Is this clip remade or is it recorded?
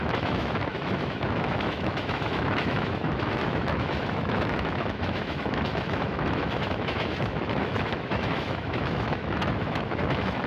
remade